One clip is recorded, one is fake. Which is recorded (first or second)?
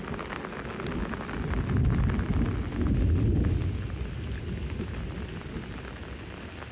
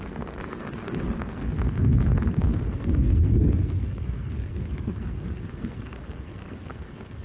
first